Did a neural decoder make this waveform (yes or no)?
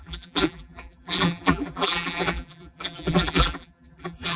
yes